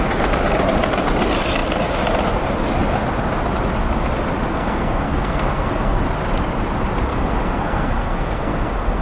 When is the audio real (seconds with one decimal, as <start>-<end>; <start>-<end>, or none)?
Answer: 0.0-4.5; 6.0-7.1